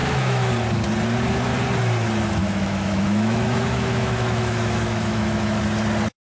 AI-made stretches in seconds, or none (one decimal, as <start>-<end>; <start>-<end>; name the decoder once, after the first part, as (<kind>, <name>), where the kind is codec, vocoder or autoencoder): 0.0-0.5 (autoencoder, DAC-VAE); 2.4-5.6